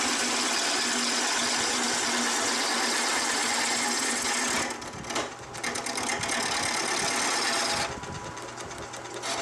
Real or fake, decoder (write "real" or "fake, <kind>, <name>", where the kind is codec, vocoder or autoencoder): real